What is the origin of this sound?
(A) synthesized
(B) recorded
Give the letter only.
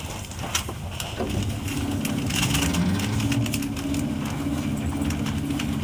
B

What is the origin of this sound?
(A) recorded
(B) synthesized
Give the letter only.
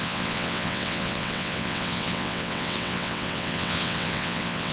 B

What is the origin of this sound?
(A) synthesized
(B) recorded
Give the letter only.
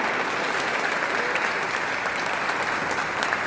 B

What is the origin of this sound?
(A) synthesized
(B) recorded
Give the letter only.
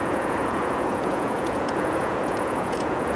A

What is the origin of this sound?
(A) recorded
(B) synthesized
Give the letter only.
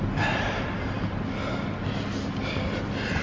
A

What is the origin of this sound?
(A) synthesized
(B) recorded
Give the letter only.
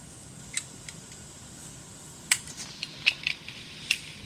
A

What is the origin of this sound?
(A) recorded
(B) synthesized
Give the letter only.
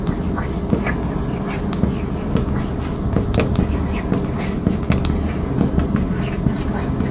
A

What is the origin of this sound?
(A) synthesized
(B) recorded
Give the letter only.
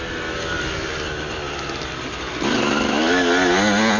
B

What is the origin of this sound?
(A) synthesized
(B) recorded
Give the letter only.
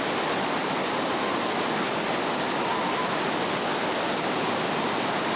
B